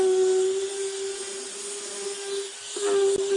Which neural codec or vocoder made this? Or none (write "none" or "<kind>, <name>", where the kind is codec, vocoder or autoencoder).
none